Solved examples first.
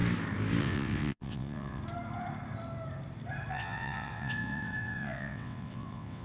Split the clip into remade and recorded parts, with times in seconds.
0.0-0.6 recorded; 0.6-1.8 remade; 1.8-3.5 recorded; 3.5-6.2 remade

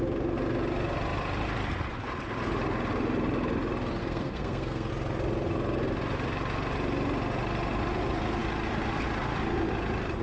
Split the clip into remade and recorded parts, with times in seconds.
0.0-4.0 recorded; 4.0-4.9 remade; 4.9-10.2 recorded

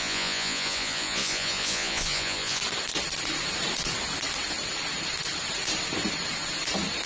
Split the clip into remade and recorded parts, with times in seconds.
0.0-2.6 remade; 2.6-7.1 recorded